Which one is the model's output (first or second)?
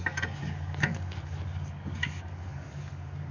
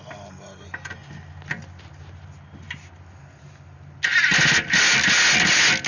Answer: first